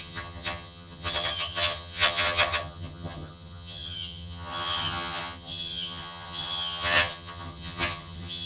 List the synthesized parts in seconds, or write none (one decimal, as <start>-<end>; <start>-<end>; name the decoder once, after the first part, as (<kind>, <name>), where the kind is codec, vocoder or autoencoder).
0.0-8.5 (vocoder, HiFi-GAN)